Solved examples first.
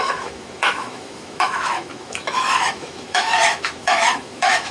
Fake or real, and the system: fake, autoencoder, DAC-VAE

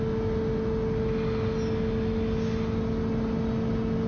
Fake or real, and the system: real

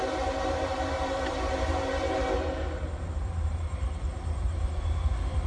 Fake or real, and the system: fake, vocoder, BigVGAN v2